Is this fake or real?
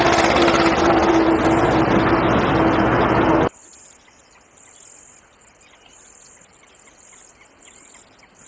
real